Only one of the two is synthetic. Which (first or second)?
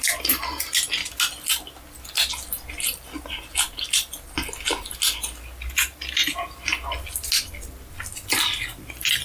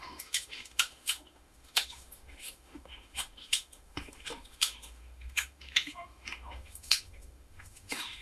second